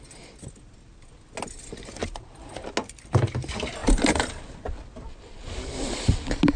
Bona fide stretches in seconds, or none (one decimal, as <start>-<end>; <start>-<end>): 0.0-2.0; 2.7-3.8; 4.4-6.6